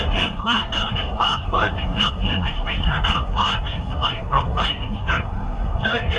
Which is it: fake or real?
fake